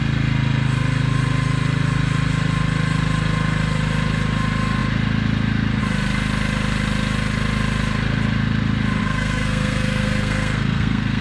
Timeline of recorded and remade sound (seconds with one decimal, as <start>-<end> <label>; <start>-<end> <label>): 0.0-9.0 recorded; 9.0-11.2 remade